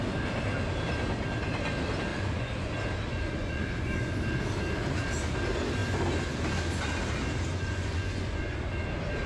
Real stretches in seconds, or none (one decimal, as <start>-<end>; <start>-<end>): 0.0-2.1; 2.7-3.1; 4.2-7.5; 8.4-9.3